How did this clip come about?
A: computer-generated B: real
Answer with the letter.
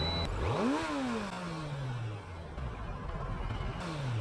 B